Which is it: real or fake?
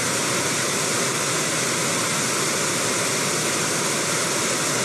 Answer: real